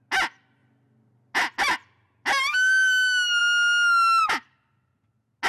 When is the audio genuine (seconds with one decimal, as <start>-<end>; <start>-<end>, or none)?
0.0-5.5